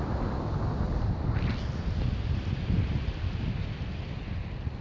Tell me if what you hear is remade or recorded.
recorded